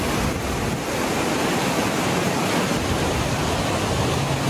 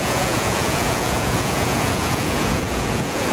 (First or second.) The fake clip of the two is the second